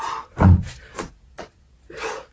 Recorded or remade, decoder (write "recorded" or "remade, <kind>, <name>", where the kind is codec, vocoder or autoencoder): remade, vocoder, Vocos